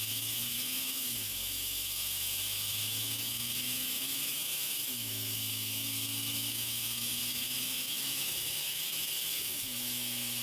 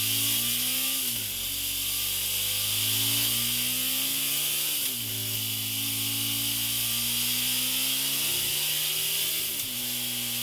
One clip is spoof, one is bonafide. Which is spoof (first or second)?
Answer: first